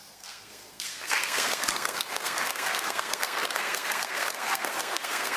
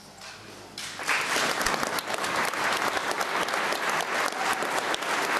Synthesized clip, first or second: first